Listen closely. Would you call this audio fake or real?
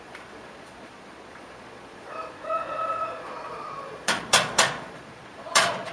fake